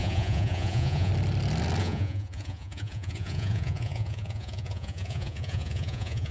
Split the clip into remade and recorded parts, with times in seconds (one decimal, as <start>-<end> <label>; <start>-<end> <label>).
0.0-1.1 remade; 1.1-1.8 recorded; 1.8-6.3 remade